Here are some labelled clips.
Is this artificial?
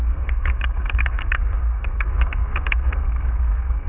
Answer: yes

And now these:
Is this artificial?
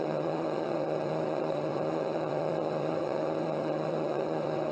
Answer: yes